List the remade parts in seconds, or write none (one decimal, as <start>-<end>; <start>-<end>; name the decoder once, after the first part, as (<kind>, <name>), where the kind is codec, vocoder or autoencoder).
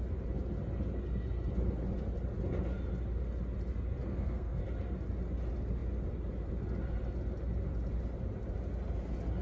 4.1-4.6 (codec, SNAC)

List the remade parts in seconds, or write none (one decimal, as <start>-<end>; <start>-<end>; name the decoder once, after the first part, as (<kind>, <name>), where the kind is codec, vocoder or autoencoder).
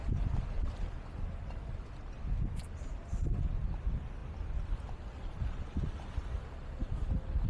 none